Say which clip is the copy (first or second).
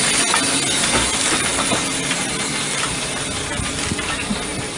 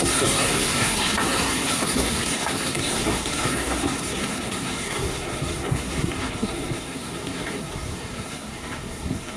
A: second